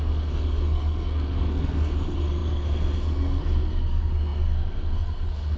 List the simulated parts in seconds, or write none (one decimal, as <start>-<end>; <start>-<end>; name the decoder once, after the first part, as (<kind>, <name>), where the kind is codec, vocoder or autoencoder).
0.0-5.6 (codec, SNAC)